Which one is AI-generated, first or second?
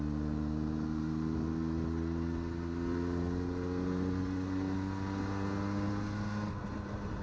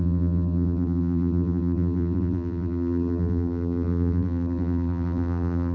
second